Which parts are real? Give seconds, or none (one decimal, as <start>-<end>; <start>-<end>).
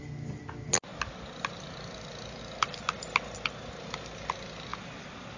0.0-5.4